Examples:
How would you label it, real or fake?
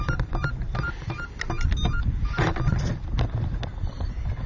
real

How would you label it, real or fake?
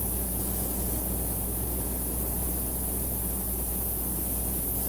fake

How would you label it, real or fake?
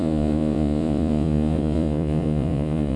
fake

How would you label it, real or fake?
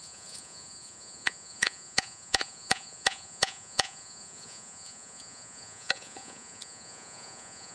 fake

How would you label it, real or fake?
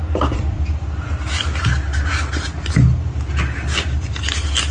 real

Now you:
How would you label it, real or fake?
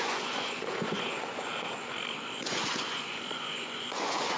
fake